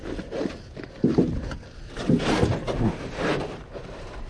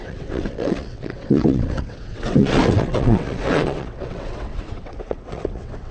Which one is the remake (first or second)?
second